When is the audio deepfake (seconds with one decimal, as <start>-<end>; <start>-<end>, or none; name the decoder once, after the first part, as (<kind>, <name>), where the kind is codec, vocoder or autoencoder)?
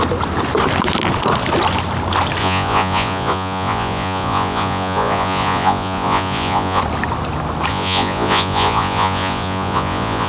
2.4-6.8 (vocoder, Vocos); 7.7-10.3